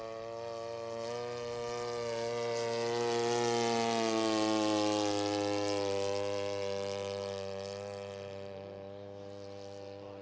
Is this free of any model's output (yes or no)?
yes